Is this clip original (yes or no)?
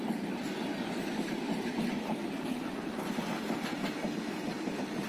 yes